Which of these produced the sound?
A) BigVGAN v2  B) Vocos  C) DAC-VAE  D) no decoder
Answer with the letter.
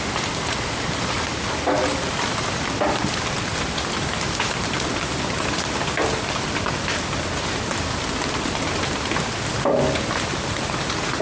D